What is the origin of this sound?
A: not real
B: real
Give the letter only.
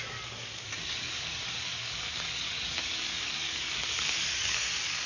A